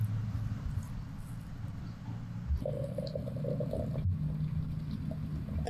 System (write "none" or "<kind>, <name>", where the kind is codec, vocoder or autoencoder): none